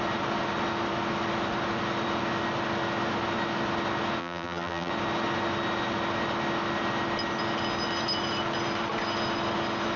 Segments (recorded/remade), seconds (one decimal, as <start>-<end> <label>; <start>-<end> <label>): 0.0-4.2 recorded; 4.2-4.9 remade; 4.9-10.0 recorded